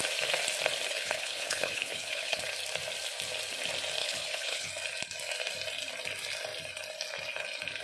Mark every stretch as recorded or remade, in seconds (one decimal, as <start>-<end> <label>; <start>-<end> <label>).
0.0-0.9 recorded; 0.9-2.4 remade; 2.4-4.0 recorded; 4.0-4.7 remade; 4.7-7.8 recorded